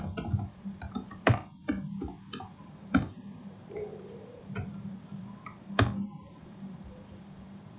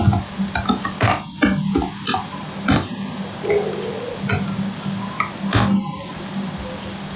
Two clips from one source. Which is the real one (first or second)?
second